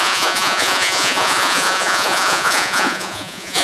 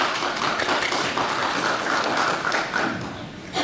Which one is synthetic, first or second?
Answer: first